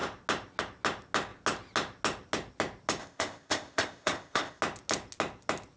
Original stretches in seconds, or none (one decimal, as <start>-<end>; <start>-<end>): 0.0-3.0; 4.6-5.8